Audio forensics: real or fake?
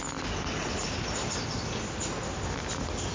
real